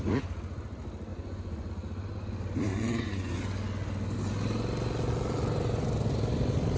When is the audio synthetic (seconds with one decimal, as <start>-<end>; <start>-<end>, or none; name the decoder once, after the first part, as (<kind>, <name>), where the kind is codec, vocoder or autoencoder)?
1.1-1.7 (vocoder, Vocos); 2.7-3.3